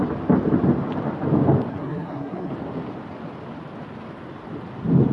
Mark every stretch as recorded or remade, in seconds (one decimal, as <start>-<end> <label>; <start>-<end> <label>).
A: 0.0-1.7 recorded; 1.7-2.5 remade; 2.5-5.1 recorded